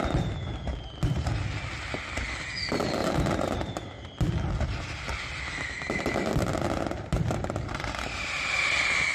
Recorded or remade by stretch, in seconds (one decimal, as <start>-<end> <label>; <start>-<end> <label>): 0.0-3.0 recorded; 3.0-4.2 remade; 4.2-9.1 recorded